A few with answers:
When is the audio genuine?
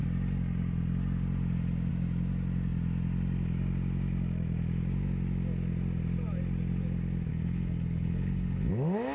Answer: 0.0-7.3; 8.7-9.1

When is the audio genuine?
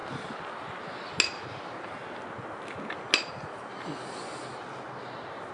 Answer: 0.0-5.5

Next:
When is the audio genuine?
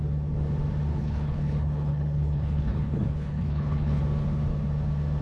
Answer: 0.0-0.9; 4.0-5.2